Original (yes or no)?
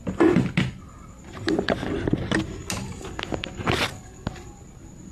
yes